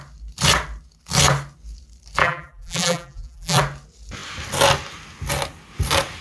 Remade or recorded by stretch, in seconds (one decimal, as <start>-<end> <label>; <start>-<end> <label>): 0.0-2.2 recorded; 2.2-3.6 remade; 3.6-6.2 recorded